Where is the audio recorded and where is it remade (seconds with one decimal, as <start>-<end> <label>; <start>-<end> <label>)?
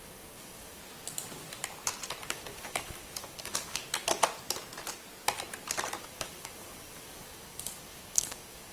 0.0-0.8 remade; 0.8-2.3 recorded; 2.3-3.8 remade; 3.8-6.0 recorded; 6.0-8.7 remade